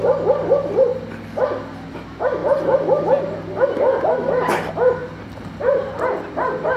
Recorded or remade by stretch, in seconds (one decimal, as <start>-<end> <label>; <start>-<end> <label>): 0.0-0.9 remade; 0.9-2.4 recorded; 2.4-3.0 remade; 3.0-5.0 recorded; 5.0-6.2 remade; 6.2-6.8 recorded